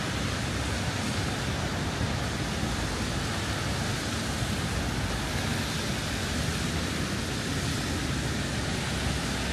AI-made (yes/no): no